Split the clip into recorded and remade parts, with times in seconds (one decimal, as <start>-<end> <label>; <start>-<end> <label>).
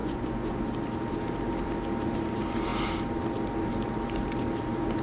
0.0-0.6 remade; 0.6-5.0 recorded